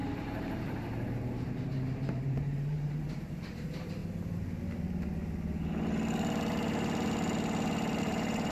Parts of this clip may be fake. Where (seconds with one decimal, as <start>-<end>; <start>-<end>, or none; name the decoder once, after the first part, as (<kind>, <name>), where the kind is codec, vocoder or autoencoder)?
0.0-4.0 (vocoder, BigVGAN v2); 8.0-8.5

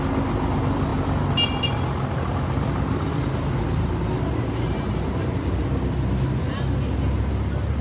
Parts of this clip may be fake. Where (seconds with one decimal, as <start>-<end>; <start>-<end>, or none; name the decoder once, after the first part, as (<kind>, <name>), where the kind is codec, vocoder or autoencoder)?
none

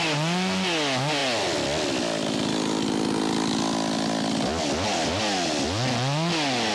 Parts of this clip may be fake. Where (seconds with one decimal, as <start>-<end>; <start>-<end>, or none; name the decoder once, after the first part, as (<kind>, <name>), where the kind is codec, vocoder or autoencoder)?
none